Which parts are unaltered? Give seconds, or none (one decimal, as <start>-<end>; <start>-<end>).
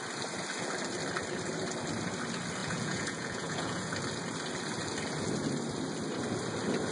0.0-2.6; 3.9-6.9